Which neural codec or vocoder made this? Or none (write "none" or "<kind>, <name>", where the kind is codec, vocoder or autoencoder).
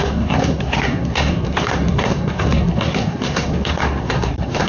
codec, SNAC